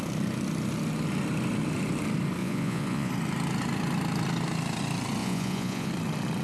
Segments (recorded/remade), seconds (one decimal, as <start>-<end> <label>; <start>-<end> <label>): 0.0-2.4 recorded; 2.4-3.1 remade; 3.1-5.2 recorded; 5.2-5.9 remade; 5.9-6.4 recorded